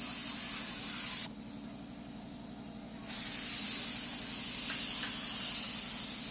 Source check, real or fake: real